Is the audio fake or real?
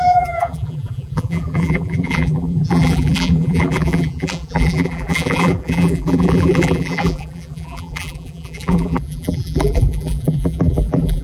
fake